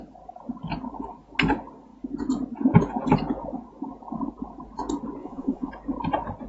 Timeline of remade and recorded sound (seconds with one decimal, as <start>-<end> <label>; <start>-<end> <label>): 0.0-5.2 recorded; 5.2-5.7 remade; 5.7-6.5 recorded